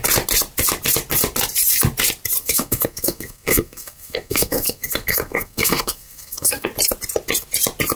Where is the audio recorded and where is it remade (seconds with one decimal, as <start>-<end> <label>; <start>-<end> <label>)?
0.0-2.4 recorded; 2.4-6.7 remade; 6.7-7.9 recorded